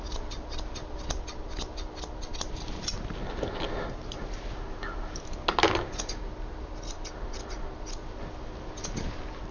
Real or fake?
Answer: real